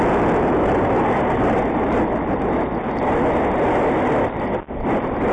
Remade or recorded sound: recorded